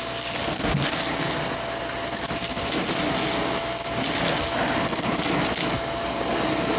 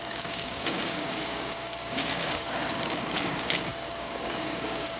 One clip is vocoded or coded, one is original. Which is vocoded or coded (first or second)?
second